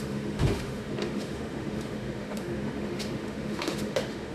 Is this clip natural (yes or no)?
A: no